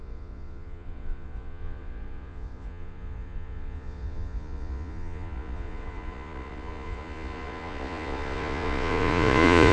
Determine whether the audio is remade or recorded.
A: remade